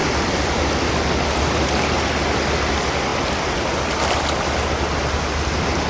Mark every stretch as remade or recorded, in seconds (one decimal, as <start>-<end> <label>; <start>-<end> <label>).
0.0-1.0 remade; 1.0-5.9 recorded